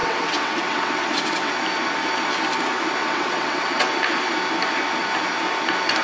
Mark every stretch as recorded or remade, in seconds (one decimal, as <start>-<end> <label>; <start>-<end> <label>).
0.0-1.5 remade; 1.5-3.0 recorded; 3.0-3.9 remade; 3.9-6.0 recorded